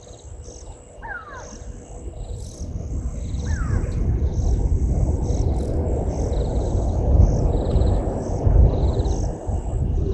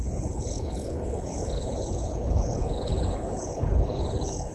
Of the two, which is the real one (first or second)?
first